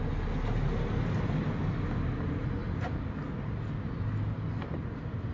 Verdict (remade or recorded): recorded